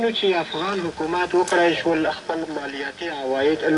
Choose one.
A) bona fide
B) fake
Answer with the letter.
A